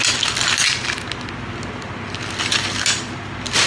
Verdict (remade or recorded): recorded